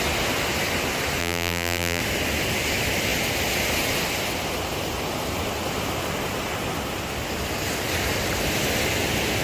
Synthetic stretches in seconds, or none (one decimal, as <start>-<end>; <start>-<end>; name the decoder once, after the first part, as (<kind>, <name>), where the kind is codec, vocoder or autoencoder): 1.2-2.0 (vocoder, BigVGAN v2)